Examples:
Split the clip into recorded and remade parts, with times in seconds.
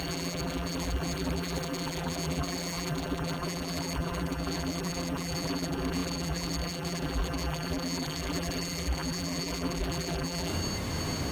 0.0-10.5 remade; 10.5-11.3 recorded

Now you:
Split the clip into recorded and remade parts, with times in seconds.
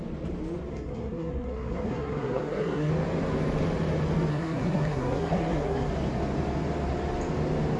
0.0-0.7 recorded; 0.7-2.9 remade; 2.9-4.3 recorded; 4.3-5.9 remade; 5.9-7.8 recorded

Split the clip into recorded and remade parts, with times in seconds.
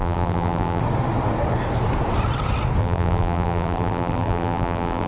0.0-0.8 remade; 0.8-2.8 recorded; 2.8-5.1 remade